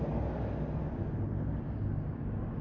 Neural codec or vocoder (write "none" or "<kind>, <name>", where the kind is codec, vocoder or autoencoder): none